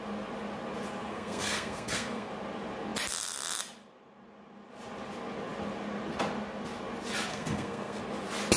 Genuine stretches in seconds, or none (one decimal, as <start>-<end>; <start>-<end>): 0.0-1.1; 2.3-7.3; 8.0-8.6

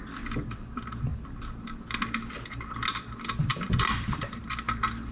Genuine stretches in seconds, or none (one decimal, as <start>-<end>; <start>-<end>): 0.0-3.5; 4.4-5.1